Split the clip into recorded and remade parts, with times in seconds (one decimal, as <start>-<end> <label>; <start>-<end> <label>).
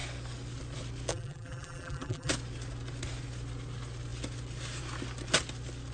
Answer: 0.0-1.1 recorded; 1.1-2.3 remade; 2.3-5.9 recorded